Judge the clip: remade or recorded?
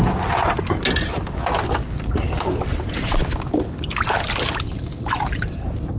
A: recorded